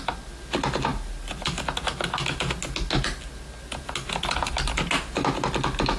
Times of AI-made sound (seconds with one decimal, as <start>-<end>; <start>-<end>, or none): none